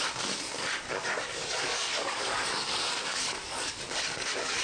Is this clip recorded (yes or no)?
no